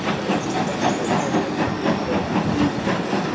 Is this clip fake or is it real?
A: real